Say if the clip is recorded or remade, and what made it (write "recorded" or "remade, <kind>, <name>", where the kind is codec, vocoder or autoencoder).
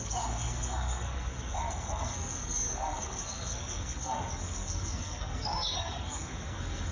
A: remade, codec, SNAC